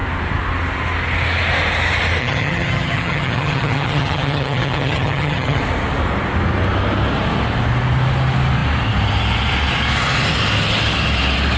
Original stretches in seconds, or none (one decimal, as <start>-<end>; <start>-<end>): 0.0-2.2; 5.6-11.6